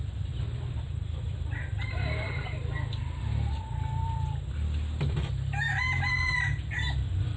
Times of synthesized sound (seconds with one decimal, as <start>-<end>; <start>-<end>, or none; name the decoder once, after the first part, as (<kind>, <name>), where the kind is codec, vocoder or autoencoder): none